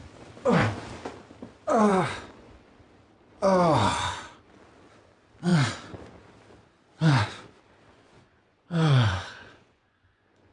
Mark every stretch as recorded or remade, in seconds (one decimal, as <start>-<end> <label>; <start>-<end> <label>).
0.0-1.9 recorded; 1.9-2.5 remade; 2.5-7.9 recorded; 7.9-10.5 remade